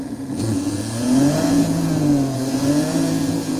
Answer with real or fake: fake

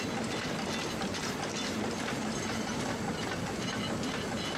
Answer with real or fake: real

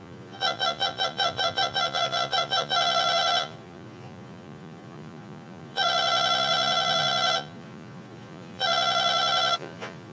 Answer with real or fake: fake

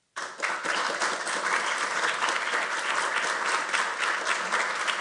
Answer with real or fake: real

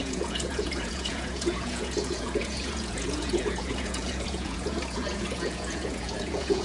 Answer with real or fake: fake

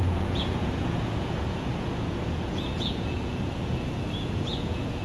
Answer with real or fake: fake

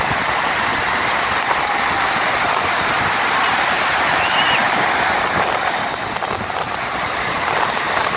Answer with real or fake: real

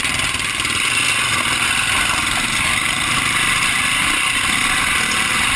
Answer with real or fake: real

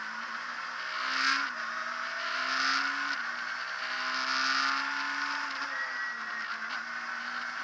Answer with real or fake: real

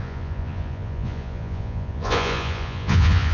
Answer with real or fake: fake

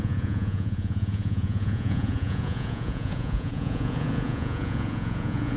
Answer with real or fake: fake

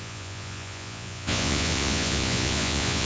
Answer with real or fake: fake